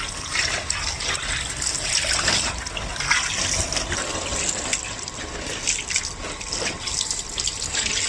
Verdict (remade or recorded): recorded